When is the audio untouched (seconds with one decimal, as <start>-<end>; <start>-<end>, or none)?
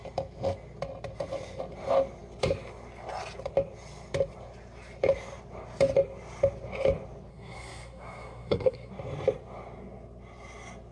0.0-7.3; 8.9-10.9